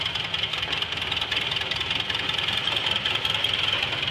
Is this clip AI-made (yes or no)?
no